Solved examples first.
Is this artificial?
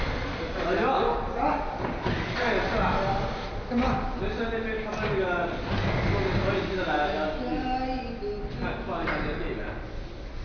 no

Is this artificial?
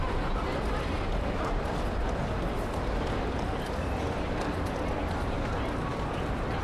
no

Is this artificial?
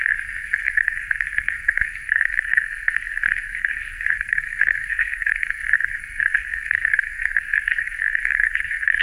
yes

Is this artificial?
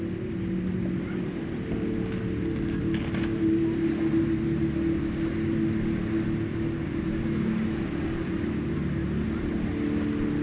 no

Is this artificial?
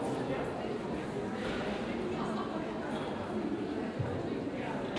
no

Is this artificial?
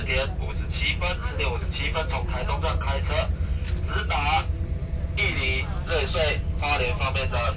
no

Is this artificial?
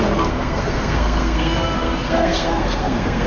yes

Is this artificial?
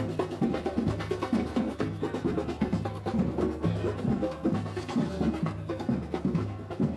yes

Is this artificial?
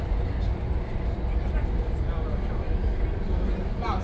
no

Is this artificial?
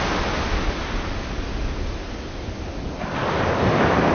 no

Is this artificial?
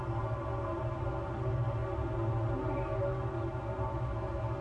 no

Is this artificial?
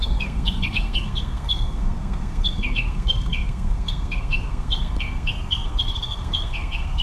yes